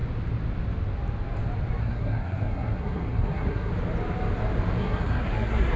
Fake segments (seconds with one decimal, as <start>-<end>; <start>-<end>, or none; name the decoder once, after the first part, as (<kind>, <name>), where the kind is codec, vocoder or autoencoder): 1.8-3.7 (codec, SNAC); 4.8-5.8